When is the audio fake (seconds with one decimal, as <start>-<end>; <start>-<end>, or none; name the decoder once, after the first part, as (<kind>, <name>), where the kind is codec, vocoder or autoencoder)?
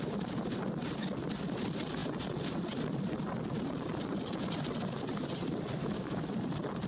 5.8-6.3 (autoencoder, DAC-VAE)